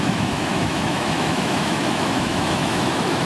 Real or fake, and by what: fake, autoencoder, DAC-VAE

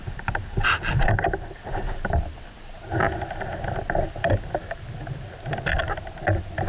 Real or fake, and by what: real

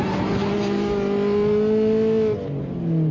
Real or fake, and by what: real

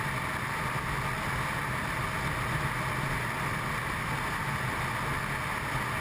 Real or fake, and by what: real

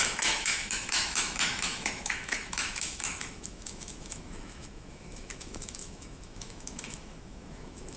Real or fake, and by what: fake, autoencoder, DAC-VAE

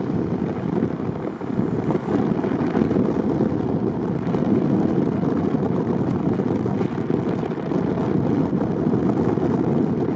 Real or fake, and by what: real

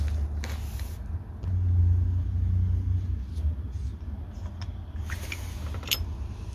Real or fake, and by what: real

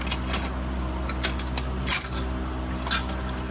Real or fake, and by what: real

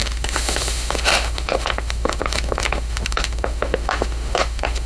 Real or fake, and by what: fake, autoencoder, DAC-VAE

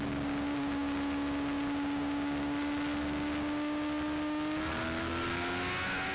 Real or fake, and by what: real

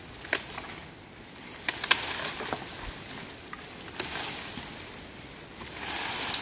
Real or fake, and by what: real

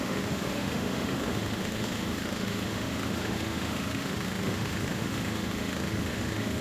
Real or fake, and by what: fake, autoencoder, DAC-VAE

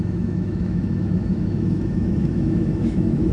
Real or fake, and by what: fake, autoencoder, DAC-VAE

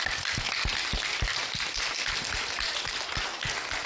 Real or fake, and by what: real